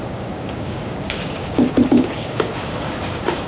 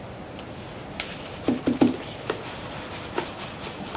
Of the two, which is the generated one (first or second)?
first